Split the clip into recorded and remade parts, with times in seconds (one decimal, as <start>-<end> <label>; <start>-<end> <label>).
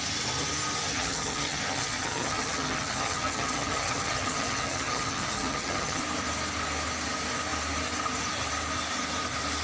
0.0-0.9 recorded; 0.9-6.0 remade; 6.0-9.6 recorded